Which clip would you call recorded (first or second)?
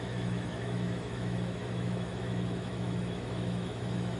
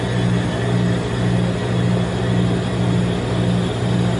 second